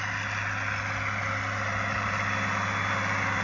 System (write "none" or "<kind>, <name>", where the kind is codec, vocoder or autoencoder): none